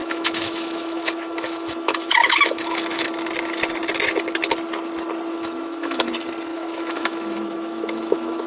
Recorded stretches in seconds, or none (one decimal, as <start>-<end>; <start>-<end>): 3.1-5.3; 6.1-6.5